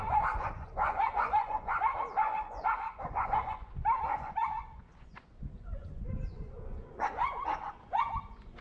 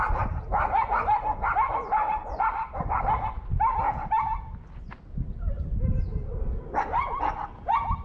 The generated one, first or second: first